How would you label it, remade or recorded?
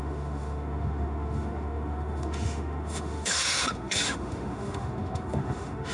remade